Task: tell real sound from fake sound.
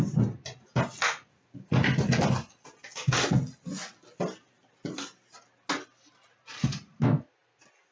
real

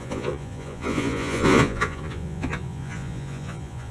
fake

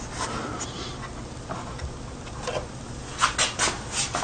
real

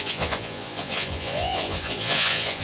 fake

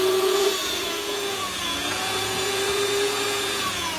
fake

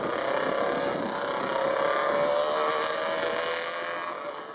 real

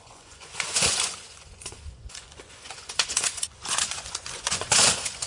fake